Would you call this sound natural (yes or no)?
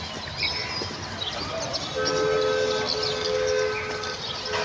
yes